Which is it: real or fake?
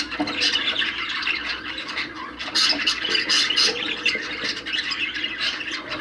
real